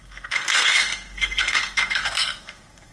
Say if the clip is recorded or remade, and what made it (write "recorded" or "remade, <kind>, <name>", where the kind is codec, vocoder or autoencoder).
remade, codec, SNAC